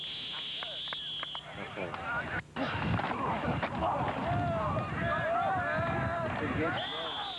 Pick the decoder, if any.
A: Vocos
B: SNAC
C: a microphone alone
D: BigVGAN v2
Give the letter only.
C